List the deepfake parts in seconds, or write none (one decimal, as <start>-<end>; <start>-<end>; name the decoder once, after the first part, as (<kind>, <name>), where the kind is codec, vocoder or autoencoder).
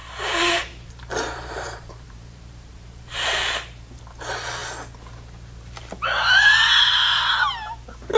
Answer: 0.0-4.0 (vocoder, BigVGAN v2)